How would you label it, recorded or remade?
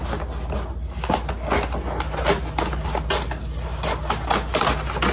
recorded